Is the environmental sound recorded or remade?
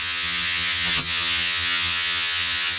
remade